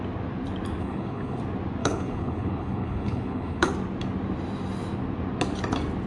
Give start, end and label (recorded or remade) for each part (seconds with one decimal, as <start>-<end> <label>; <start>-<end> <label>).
0.0-0.8 recorded; 0.8-1.4 remade; 1.4-1.8 recorded; 1.8-3.7 remade; 3.7-6.1 recorded